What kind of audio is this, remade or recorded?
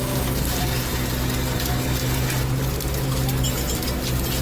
recorded